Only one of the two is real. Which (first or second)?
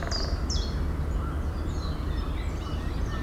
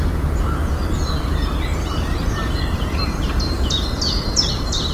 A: first